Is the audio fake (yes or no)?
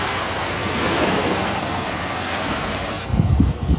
yes